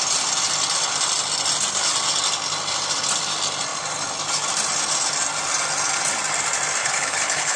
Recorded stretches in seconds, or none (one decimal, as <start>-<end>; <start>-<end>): 0.0-6.8